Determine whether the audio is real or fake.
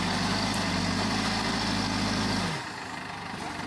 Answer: real